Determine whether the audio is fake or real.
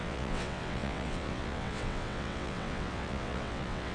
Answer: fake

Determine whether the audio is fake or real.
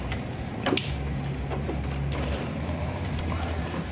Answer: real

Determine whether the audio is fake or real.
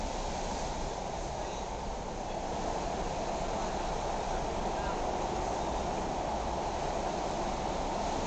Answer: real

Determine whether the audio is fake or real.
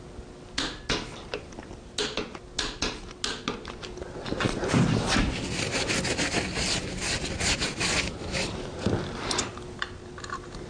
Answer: real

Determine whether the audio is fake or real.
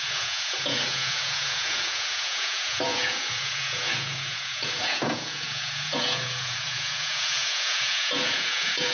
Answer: fake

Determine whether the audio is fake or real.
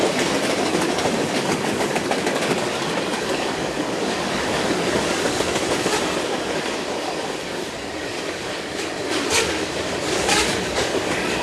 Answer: fake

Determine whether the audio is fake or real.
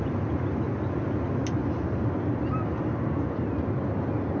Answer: real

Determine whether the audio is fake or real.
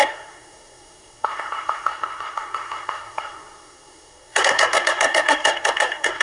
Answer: fake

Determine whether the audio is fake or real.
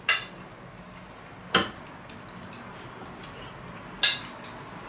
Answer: real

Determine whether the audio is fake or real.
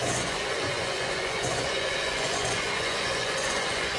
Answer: fake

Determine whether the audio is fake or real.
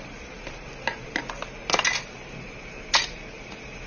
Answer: real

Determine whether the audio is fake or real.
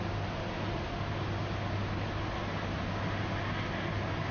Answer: real